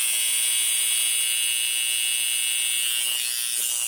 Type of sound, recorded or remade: recorded